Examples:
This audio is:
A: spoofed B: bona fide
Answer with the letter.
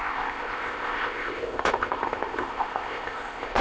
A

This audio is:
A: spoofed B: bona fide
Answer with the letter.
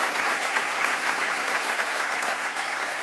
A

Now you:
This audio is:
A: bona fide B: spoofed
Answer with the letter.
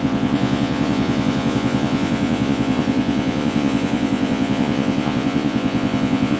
B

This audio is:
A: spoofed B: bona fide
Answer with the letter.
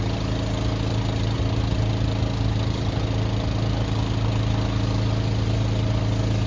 B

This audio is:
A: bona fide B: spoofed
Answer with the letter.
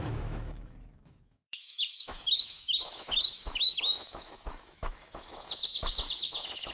B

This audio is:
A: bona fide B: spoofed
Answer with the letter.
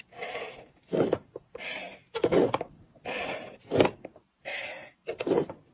B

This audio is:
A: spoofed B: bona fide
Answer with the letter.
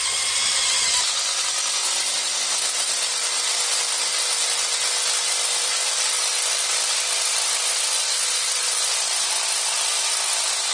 B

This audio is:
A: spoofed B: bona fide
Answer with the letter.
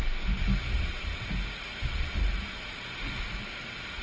B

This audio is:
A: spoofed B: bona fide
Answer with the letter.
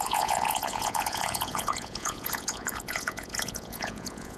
A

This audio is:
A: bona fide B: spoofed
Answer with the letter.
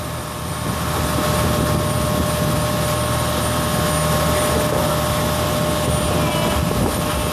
A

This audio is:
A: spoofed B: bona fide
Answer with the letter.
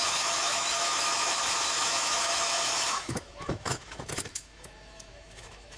A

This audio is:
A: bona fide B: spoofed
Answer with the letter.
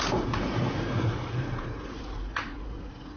B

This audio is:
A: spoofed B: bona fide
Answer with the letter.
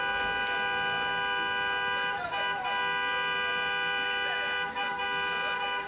B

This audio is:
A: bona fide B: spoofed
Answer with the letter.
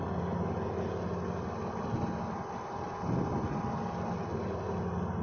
A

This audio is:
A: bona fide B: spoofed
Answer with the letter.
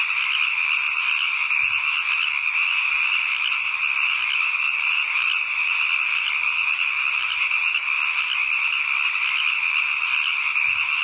A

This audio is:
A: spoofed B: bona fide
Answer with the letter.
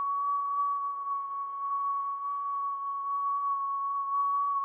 B